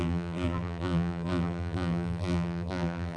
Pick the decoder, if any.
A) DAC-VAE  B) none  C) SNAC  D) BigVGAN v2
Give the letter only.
D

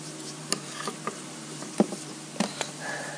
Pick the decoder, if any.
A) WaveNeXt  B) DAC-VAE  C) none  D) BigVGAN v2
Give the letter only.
D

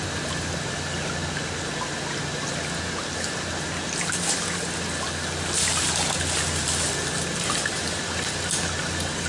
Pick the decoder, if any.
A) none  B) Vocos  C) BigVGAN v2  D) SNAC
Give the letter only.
A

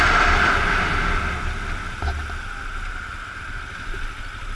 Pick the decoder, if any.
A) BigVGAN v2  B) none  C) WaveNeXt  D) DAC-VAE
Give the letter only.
B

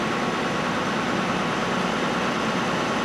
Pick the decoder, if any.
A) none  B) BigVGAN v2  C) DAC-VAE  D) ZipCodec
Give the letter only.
A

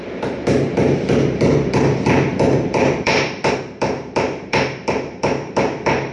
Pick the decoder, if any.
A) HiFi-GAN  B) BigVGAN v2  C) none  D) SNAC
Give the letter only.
B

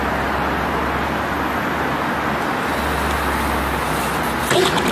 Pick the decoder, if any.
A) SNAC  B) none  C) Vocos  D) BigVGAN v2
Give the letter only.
B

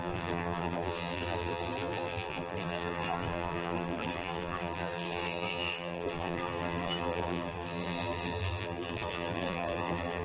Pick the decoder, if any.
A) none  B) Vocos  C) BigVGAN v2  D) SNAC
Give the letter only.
C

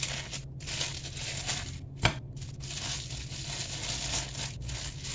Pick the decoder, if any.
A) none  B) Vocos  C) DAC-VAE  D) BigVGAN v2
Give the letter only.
A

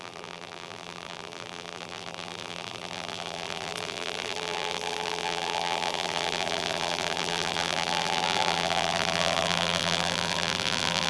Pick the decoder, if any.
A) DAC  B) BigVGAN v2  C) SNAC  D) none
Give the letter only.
B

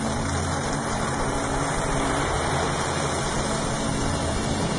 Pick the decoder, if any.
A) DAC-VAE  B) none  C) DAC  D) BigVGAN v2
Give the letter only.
D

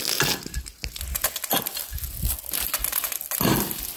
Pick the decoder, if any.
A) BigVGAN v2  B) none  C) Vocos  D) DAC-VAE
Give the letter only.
B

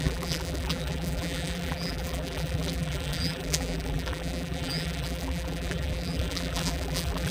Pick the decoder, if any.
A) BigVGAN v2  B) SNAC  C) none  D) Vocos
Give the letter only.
A